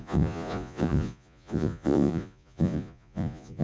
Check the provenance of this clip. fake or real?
fake